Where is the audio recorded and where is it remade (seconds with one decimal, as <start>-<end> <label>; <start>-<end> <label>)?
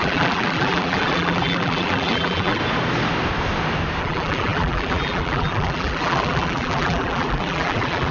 0.0-2.6 remade; 2.6-4.0 recorded; 4.0-8.1 remade